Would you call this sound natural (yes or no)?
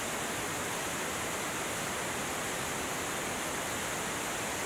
yes